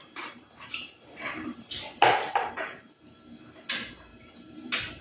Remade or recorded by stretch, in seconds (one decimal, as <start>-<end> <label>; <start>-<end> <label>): 0.0-3.0 remade; 3.0-4.1 recorded; 4.1-5.0 remade